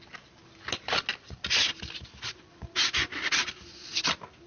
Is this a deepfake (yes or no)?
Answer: no